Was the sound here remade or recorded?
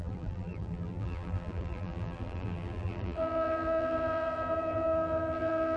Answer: remade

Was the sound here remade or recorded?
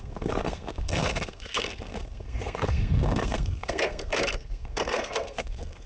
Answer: remade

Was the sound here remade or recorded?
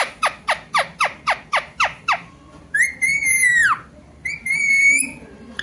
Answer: recorded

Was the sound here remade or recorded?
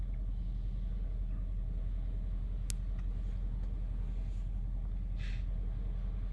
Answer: recorded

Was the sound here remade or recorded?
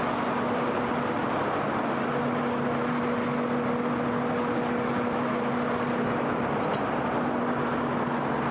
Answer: recorded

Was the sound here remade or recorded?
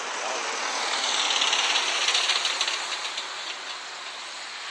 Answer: recorded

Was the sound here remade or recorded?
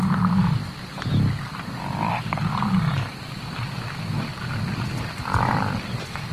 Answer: recorded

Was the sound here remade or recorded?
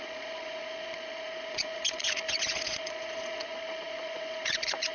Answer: remade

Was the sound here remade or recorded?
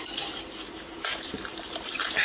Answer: remade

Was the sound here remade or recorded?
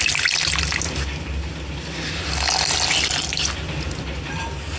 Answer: recorded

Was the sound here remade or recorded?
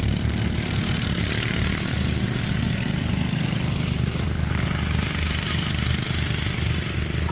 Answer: remade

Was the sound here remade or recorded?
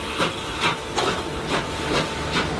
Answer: recorded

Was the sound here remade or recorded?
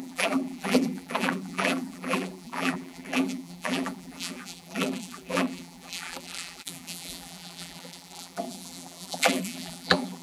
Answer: remade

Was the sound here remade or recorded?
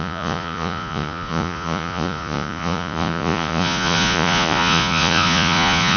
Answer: remade